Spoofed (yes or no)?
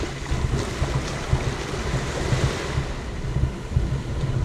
no